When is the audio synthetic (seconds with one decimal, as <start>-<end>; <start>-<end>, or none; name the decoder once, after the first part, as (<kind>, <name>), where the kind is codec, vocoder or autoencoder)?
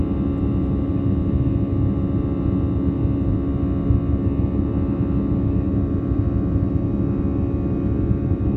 none